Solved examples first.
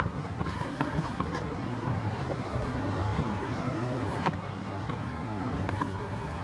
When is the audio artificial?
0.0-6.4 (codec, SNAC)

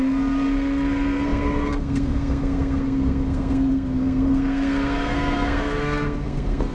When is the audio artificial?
0.0-6.7 (codec, SNAC)

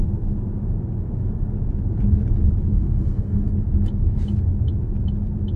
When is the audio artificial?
2.7-3.5 (codec, SNAC)

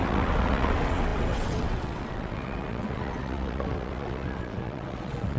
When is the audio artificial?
0.0-5.4 (vocoder, WaveNeXt)